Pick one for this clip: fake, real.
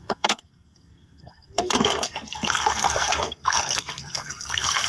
fake